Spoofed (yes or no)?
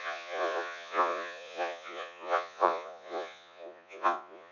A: yes